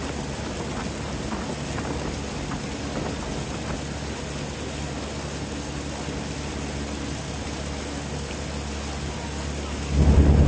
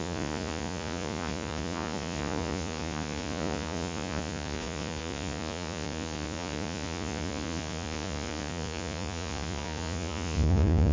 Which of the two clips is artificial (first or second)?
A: second